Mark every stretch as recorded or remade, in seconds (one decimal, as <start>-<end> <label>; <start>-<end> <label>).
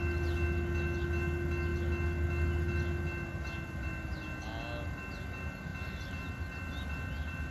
0.0-7.5 recorded